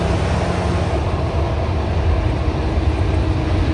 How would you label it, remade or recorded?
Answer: recorded